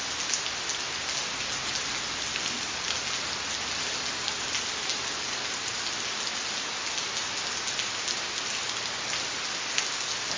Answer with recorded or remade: recorded